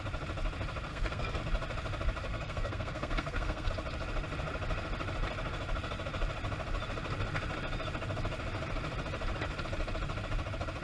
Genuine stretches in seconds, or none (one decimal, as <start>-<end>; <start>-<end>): 0.0-0.9; 1.4-2.3; 3.7-10.8